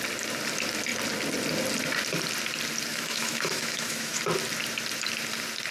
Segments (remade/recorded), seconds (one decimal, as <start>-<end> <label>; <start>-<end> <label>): 0.0-2.9 recorded; 2.9-4.2 remade; 4.2-5.7 recorded